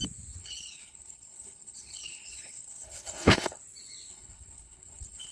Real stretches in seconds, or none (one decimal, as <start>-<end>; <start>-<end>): 0.0-0.4; 3.6-4.1